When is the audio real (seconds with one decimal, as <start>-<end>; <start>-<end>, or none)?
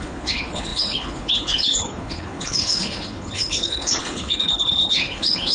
none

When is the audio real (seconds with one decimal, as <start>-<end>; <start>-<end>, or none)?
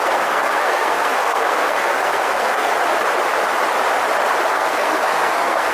2.7-4.5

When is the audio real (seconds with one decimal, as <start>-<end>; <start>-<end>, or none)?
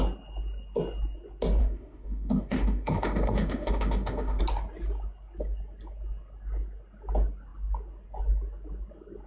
0.0-1.6; 4.4-9.3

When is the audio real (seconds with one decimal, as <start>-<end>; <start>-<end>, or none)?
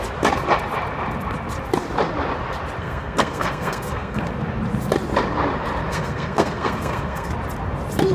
0.0-2.8; 4.2-5.9; 7.3-8.1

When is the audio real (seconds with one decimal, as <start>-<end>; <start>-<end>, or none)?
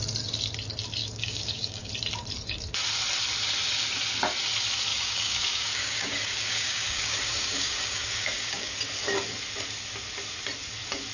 0.0-1.0; 1.9-4.9; 8.8-11.1